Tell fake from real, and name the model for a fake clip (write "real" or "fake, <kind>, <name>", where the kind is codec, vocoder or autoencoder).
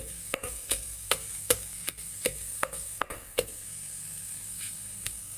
fake, codec, SNAC